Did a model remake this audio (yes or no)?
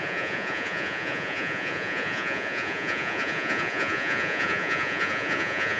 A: yes